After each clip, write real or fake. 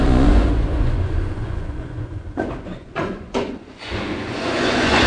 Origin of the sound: fake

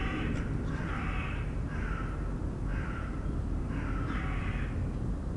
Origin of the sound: fake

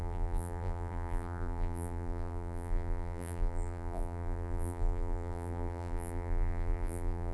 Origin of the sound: fake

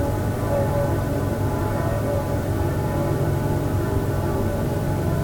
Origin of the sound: fake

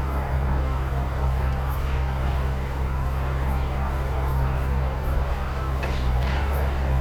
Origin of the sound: fake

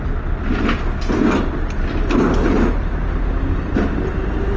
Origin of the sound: real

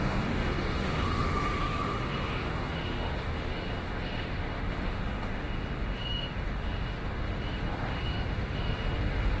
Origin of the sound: fake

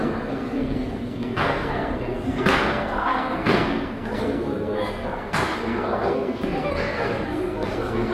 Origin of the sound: fake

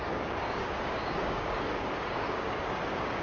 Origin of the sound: fake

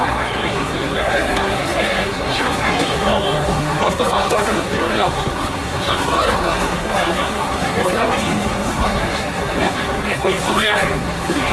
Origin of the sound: fake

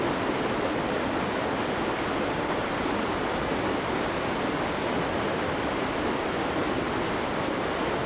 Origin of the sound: real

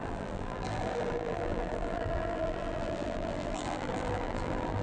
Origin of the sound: fake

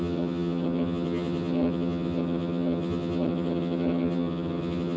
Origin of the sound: fake